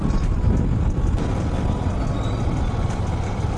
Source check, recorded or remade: recorded